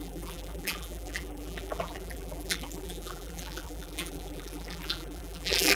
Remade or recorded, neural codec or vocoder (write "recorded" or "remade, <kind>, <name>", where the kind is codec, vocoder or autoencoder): remade, vocoder, BigVGAN v2